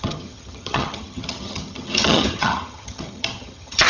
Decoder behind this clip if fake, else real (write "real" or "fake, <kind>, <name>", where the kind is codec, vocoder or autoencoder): fake, vocoder, HiFi-GAN